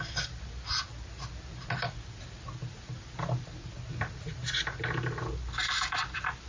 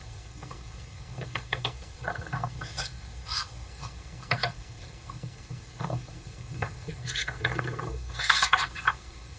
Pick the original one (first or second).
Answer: first